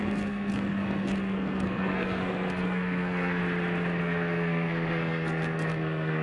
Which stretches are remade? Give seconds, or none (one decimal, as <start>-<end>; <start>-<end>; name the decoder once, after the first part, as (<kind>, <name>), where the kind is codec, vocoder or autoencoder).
0.0-3.4 (codec, SNAC); 4.0-6.2